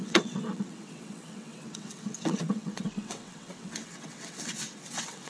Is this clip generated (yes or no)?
yes